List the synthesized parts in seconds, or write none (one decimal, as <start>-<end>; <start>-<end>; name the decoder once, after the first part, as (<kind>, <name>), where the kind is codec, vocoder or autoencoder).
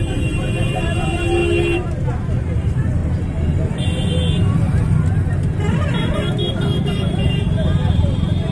0.0-1.4 (vocoder, BigVGAN v2); 2.3-3.0; 6.5-8.5